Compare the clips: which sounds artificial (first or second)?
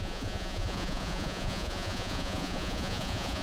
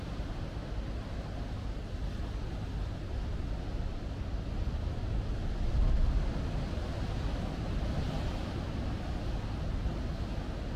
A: first